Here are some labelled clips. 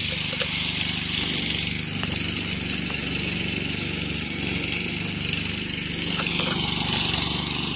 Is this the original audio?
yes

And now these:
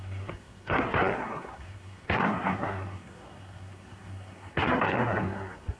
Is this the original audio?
no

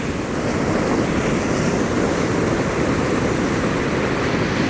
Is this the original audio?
yes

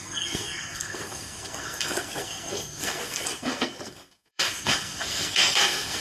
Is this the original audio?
no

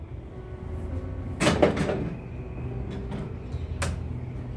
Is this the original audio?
yes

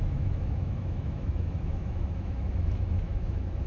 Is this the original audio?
no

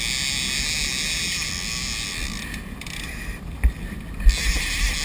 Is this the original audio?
yes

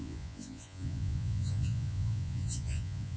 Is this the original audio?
no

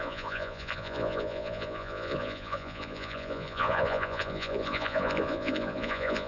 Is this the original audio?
no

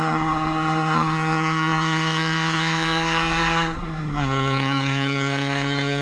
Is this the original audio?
no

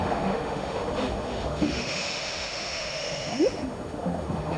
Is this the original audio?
no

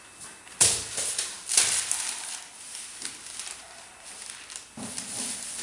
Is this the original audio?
yes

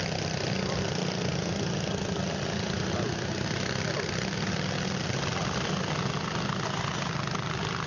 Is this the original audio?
yes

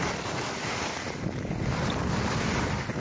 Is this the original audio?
yes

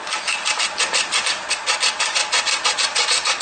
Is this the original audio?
yes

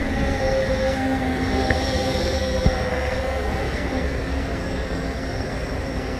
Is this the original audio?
no